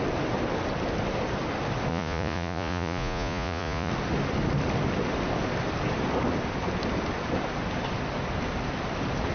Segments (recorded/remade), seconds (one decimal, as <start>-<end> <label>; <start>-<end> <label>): 0.0-1.9 recorded; 1.9-3.9 remade; 3.9-9.3 recorded